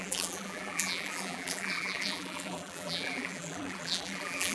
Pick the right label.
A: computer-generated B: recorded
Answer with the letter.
A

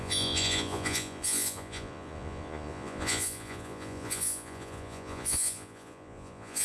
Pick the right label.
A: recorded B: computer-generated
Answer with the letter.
B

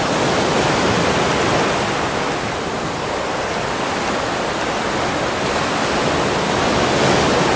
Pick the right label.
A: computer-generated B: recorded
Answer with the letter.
B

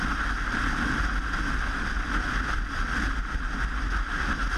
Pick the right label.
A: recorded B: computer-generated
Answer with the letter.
A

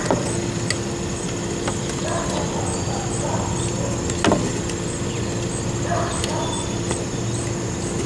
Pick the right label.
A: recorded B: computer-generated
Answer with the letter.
A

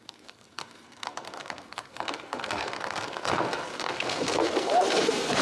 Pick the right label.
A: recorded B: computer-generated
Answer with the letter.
B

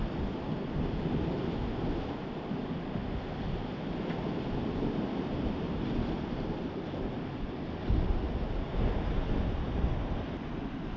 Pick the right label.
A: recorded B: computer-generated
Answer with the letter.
A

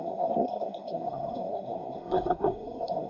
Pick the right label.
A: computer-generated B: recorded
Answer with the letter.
A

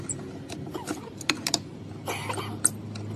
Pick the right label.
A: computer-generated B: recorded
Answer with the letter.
B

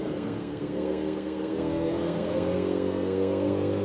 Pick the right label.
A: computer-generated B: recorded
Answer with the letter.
A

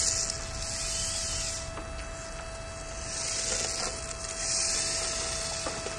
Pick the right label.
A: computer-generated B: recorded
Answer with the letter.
B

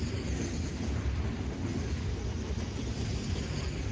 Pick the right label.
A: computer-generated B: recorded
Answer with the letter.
B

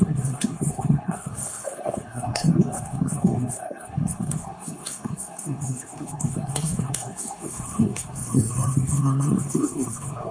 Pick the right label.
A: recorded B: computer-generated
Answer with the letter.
B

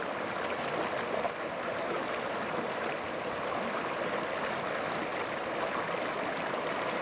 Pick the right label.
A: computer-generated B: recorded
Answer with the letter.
B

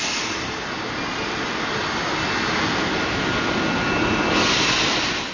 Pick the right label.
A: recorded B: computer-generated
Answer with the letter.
A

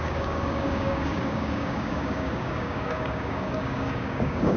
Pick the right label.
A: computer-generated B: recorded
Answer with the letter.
A